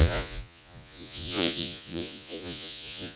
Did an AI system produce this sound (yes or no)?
yes